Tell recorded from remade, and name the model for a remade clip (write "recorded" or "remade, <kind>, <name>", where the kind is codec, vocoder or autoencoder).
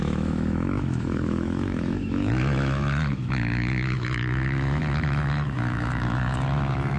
remade, autoencoder, DAC-VAE